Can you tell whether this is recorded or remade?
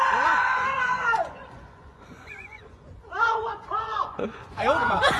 remade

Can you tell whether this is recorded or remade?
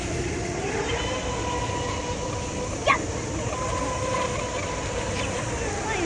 recorded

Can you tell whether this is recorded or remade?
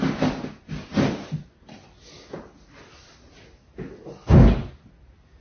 recorded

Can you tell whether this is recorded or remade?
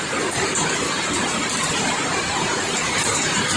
recorded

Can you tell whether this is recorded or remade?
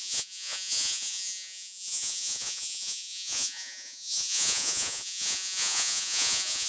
remade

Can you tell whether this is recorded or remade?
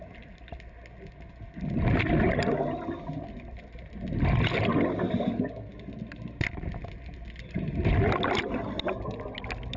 recorded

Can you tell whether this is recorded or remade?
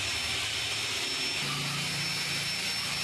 recorded